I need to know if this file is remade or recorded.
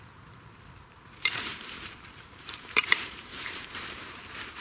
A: remade